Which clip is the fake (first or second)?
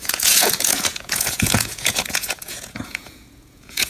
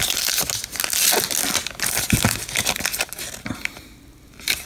first